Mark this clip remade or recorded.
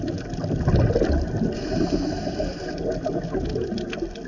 recorded